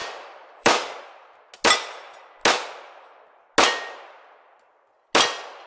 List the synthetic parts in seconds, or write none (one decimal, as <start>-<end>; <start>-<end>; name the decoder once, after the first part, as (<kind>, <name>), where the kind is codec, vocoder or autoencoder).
0.0-1.0 (vocoder, BigVGAN v2)